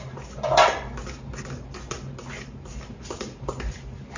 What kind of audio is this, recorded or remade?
recorded